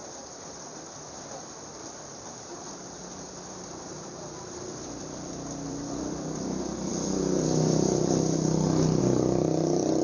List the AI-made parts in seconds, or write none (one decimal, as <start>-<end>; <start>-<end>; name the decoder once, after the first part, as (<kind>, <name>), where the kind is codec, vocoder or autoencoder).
0.0-6.9 (vocoder, BigVGAN v2); 9.0-10.0